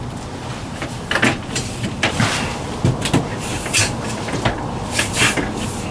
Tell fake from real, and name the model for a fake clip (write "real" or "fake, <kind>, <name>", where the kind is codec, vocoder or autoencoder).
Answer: real